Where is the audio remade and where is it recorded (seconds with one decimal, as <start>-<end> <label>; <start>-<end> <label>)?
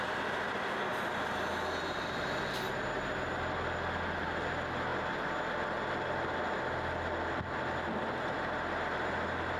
0.0-9.6 recorded